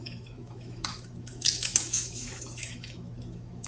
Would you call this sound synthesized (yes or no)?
yes